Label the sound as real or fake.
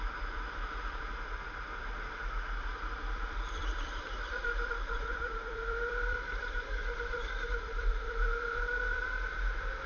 fake